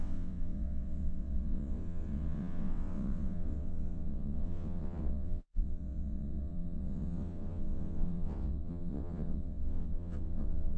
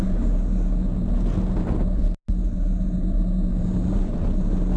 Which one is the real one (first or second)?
second